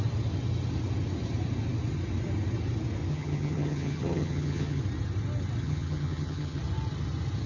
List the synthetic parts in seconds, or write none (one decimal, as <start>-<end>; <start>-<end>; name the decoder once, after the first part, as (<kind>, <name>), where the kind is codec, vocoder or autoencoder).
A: 3.1-4.8 (vocoder, HiFi-GAN); 5.6-6.6

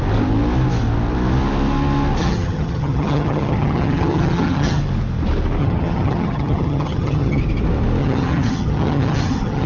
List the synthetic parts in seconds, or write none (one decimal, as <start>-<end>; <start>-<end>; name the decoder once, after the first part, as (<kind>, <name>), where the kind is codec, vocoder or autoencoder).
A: 2.2-4.8 (vocoder, HiFi-GAN); 5.6-7.4; 8.0-9.7

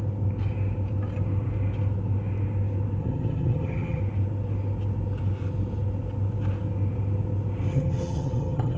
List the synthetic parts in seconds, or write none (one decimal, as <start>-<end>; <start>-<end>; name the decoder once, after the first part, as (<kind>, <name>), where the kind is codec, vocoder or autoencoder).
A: 3.0-4.0 (vocoder, HiFi-GAN); 7.7-8.8

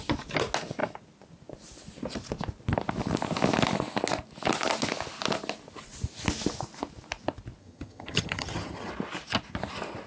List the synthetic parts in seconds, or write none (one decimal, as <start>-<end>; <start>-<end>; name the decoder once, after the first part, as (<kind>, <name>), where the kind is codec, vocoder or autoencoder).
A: 7.6-8.9 (vocoder, HiFi-GAN)

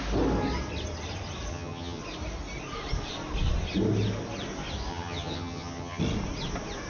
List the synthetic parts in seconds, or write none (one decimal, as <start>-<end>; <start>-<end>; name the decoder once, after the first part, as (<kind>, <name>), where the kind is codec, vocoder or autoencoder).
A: 1.5-2.0 (vocoder, HiFi-GAN); 4.9-6.0

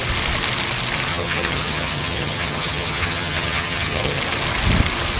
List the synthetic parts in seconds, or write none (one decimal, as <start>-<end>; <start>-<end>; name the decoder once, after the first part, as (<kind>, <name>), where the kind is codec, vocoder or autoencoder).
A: 1.1-4.2 (vocoder, HiFi-GAN)

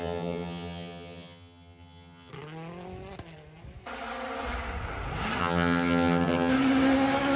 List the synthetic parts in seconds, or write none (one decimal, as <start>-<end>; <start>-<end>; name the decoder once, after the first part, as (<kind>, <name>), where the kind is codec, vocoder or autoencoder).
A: 0.0-2.3 (vocoder, HiFi-GAN); 5.4-6.5

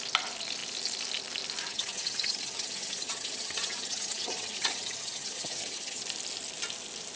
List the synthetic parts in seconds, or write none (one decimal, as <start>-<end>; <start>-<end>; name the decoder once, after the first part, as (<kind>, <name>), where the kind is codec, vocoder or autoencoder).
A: 1.7-6.0 (vocoder, HiFi-GAN)